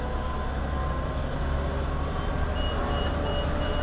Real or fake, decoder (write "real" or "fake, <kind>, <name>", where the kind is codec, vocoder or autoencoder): real